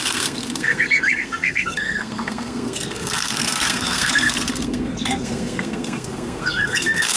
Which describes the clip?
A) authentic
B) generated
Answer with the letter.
B